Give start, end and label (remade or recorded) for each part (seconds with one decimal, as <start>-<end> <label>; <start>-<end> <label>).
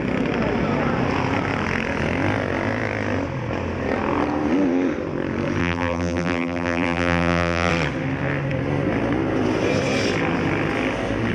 0.0-5.6 recorded; 5.6-7.7 remade; 7.7-11.3 recorded